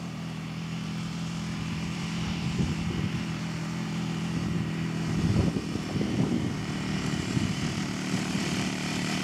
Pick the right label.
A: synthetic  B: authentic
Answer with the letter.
A